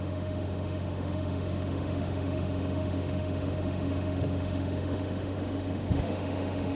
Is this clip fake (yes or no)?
yes